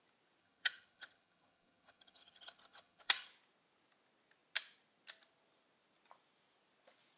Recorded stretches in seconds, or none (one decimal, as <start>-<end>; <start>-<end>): 0.0-0.4; 3.3-7.2